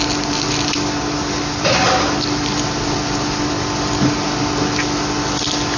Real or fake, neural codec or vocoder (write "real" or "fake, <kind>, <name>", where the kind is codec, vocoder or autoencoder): real